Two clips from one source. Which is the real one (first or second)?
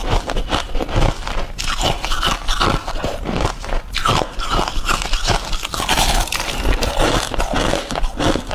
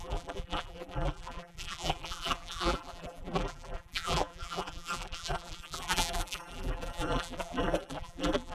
first